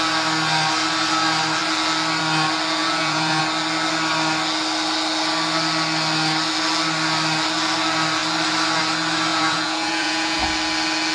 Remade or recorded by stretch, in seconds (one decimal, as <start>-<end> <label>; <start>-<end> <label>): 0.0-2.8 recorded; 2.8-3.4 remade; 3.4-9.3 recorded; 9.3-10.4 remade; 10.4-11.1 recorded